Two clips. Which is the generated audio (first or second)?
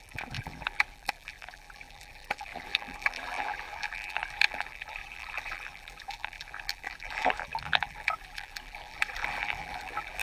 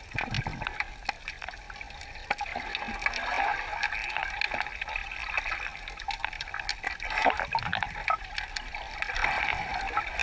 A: first